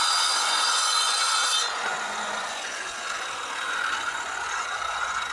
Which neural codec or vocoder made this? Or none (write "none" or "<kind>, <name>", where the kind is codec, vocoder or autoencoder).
vocoder, Vocos